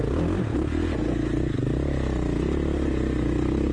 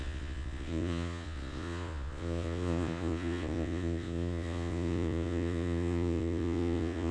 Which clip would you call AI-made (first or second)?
second